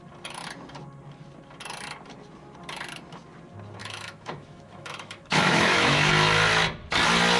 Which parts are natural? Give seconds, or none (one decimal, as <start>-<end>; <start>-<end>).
0.0-3.8; 6.1-7.4